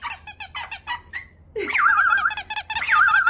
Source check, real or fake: real